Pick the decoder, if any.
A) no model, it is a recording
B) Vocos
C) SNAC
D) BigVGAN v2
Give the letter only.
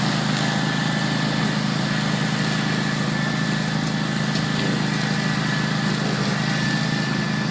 A